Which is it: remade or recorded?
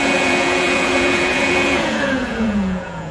remade